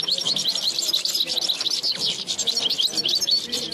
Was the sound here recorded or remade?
remade